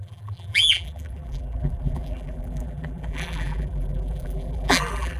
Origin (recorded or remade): remade